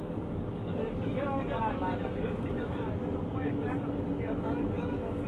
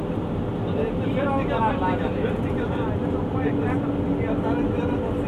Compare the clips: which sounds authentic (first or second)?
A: second